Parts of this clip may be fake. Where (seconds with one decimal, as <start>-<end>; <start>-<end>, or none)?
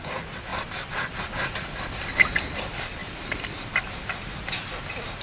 0.5-2.3; 3.0-3.8